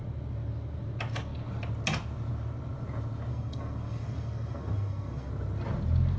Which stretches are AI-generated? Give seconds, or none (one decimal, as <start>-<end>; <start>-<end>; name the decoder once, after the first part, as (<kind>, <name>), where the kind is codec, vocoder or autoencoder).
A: 3.3-5.3 (codec, SNAC)

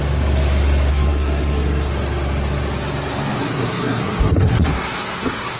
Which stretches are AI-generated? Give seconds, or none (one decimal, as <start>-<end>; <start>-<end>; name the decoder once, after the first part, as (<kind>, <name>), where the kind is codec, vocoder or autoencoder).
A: 0.9-1.9 (codec, SNAC); 3.4-5.6

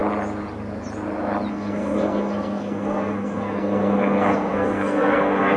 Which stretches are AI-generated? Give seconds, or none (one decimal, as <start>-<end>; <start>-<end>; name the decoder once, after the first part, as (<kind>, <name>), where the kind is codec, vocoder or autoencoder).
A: 1.5-5.6 (codec, SNAC)

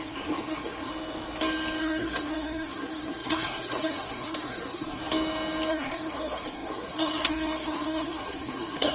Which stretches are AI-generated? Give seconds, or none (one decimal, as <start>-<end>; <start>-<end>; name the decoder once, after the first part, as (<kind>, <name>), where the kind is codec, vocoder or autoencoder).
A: 0.0-0.9 (codec, SNAC); 1.8-5.0; 5.7-8.9

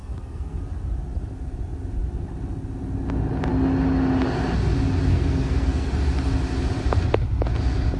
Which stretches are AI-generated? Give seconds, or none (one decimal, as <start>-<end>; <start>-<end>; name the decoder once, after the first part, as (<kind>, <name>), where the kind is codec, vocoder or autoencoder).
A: 0.0-0.6 (codec, SNAC); 5.1-5.9